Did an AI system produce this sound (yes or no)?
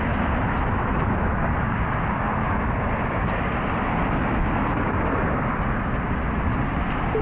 no